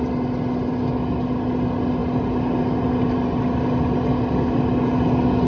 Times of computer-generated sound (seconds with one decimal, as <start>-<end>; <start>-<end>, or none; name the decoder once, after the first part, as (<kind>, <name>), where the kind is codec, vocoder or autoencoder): none